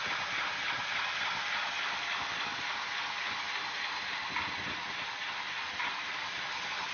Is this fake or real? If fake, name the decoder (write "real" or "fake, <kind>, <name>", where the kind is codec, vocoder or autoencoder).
real